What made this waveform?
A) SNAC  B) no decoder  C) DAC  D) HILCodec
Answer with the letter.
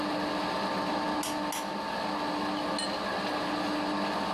B